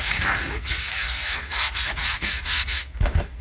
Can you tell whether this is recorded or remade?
remade